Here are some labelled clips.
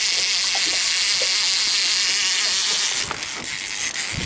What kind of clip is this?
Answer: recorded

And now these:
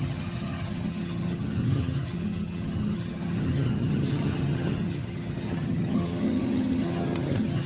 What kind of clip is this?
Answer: remade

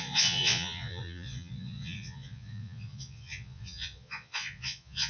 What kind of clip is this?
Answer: remade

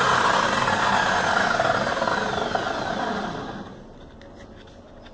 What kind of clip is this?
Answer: recorded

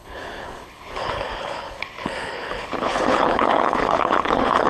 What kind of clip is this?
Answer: remade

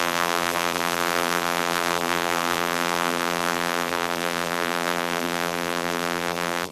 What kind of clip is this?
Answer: remade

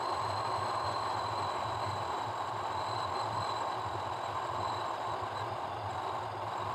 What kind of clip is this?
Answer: recorded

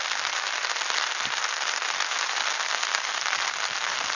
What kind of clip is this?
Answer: recorded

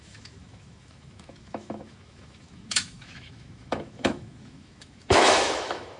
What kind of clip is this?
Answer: remade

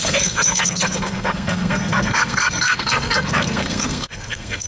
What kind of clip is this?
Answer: remade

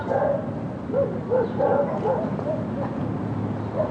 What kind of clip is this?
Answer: recorded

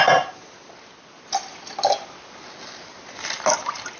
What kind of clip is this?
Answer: recorded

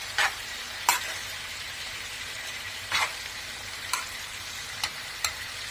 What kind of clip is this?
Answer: remade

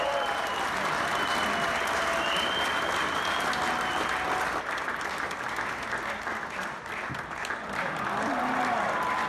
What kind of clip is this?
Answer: recorded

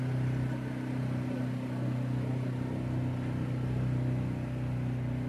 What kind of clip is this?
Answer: recorded